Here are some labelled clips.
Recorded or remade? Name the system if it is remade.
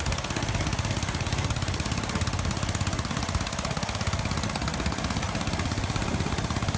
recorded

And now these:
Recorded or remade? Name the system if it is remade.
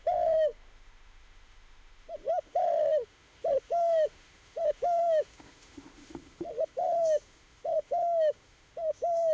remade, autoencoder, DAC-VAE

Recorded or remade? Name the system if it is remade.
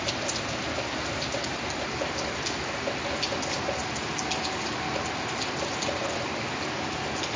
recorded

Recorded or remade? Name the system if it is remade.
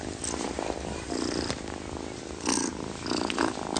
recorded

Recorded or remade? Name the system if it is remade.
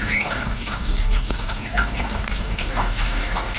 remade, codec, DAC